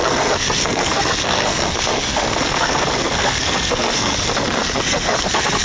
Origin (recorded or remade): remade